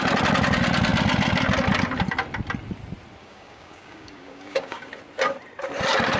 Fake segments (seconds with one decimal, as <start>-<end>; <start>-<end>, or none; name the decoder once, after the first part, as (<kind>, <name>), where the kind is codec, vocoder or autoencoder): 3.2-4.9 (codec, DAC)